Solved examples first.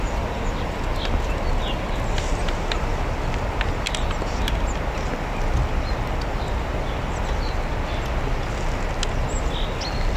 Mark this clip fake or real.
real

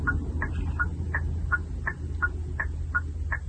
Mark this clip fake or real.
real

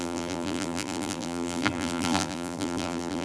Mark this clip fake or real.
fake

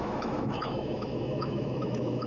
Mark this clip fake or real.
fake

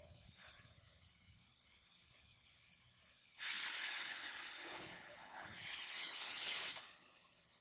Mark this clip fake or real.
fake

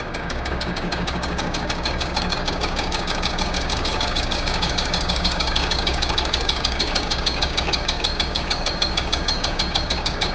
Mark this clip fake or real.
fake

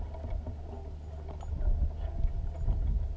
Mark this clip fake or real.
real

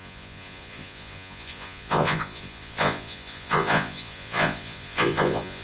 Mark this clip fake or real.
fake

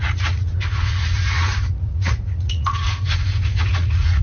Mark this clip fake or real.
fake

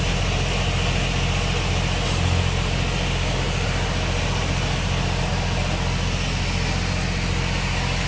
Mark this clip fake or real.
real